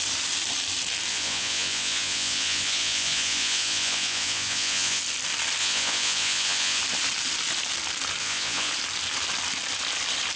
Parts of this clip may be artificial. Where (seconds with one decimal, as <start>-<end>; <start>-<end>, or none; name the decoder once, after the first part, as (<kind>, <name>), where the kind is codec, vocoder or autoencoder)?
1.1-5.0 (vocoder, Vocos); 5.6-6.8; 8.2-8.7